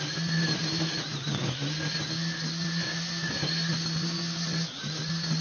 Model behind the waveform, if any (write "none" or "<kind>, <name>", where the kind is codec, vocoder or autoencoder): none